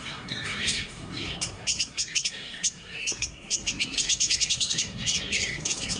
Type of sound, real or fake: fake